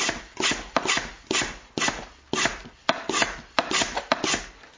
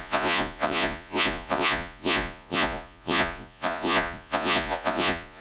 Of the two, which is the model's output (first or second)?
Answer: second